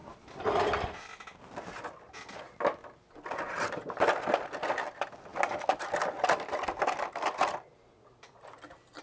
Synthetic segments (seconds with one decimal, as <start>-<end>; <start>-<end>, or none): 5.3-9.0